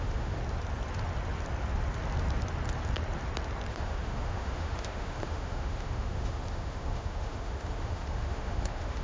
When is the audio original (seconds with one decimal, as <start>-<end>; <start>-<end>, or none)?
0.4-3.7